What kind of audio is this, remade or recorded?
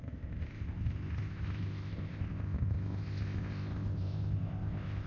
remade